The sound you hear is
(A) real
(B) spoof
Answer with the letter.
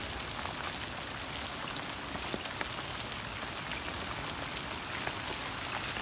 A